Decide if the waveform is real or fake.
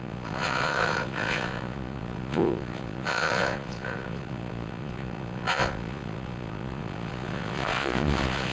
fake